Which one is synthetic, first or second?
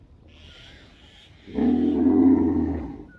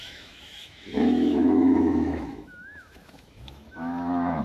second